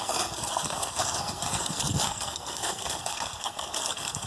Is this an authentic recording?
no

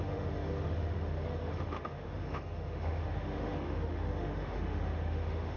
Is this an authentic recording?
no